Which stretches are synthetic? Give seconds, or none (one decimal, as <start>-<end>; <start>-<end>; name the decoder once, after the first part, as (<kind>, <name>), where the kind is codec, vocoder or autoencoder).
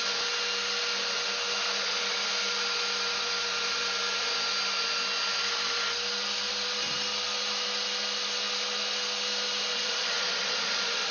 9.7-11.1 (vocoder, Vocos)